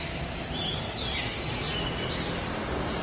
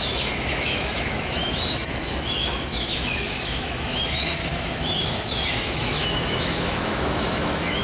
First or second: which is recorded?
first